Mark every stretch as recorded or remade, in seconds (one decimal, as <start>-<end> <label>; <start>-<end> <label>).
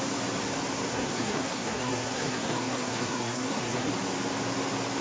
0.0-0.9 recorded; 0.9-3.9 remade; 3.9-5.0 recorded